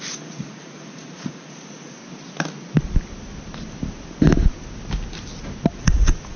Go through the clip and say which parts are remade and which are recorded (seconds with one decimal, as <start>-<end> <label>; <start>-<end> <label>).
0.0-2.0 remade; 2.0-5.8 recorded; 5.8-6.4 remade